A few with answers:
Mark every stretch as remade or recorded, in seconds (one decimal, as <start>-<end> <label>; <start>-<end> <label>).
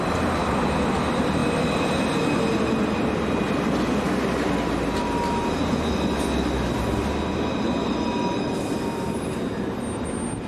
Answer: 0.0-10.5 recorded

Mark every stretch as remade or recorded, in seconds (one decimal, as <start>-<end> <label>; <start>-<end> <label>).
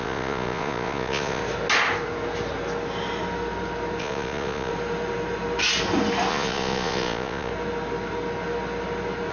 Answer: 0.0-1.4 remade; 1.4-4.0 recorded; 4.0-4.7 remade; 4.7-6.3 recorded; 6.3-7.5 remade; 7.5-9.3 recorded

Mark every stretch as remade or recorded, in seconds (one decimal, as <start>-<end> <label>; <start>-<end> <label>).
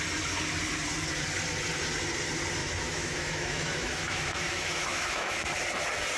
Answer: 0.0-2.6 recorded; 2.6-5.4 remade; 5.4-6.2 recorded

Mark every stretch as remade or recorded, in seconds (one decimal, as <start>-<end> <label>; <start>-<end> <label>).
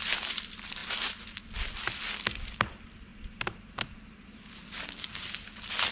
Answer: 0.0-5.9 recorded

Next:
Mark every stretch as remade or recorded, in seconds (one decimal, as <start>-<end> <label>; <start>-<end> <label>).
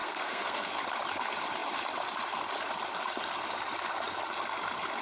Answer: 0.0-0.8 remade; 0.8-5.0 recorded